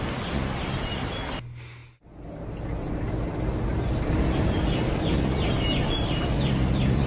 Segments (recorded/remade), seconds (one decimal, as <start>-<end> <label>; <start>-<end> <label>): 0.0-7.1 recorded